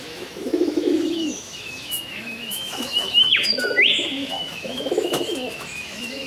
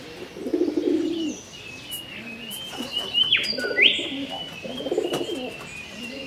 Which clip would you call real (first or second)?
second